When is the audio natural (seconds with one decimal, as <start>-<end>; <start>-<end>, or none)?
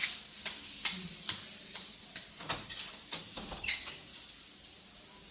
0.0-3.2; 4.1-5.3